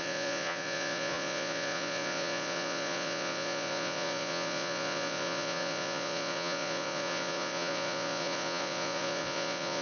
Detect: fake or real fake